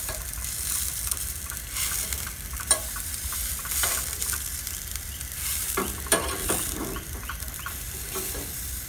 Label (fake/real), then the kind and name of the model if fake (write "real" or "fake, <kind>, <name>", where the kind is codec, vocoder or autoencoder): fake, vocoder, BigVGAN v2